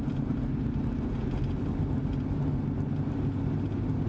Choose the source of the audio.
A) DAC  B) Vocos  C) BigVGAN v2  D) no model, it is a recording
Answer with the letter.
D